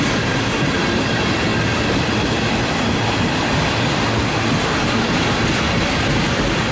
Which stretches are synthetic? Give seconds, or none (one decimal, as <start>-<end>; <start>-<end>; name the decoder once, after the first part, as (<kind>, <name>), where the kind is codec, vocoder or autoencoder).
none